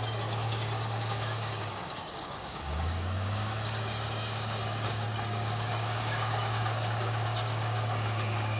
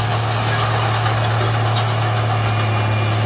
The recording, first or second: second